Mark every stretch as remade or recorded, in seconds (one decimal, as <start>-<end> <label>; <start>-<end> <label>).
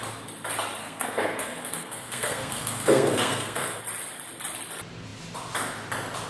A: 0.0-0.8 recorded; 0.8-3.8 remade; 3.8-6.3 recorded